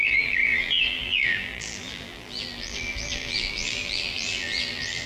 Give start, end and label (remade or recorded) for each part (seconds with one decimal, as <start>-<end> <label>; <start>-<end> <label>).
0.0-5.1 remade